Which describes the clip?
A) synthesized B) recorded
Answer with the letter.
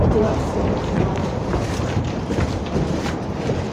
A